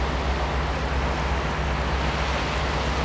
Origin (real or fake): real